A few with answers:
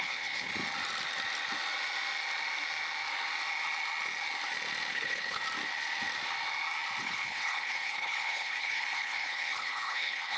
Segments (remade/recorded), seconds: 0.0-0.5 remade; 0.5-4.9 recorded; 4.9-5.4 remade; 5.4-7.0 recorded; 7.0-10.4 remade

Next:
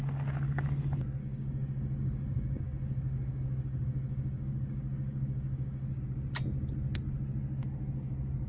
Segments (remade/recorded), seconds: 0.0-1.2 recorded; 1.2-6.0 remade; 6.0-8.5 recorded

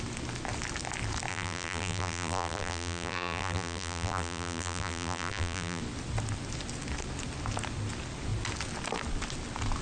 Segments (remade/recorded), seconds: 0.0-1.3 recorded; 1.3-5.8 remade; 5.8-9.8 recorded

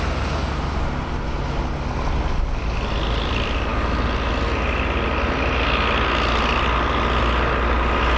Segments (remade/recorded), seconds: 0.0-8.2 recorded

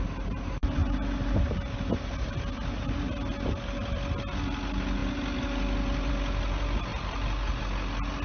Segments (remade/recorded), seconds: 0.0-0.8 recorded; 0.8-1.5 remade; 1.5-6.9 recorded; 6.9-7.6 remade; 7.6-8.2 recorded

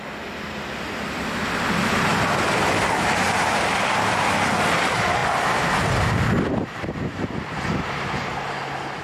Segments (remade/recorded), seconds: 0.0-9.0 recorded